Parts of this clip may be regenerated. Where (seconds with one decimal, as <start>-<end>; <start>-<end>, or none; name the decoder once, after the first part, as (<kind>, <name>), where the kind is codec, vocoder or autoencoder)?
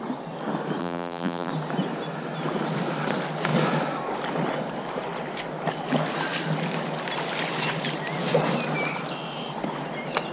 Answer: 0.8-1.5 (vocoder, BigVGAN v2)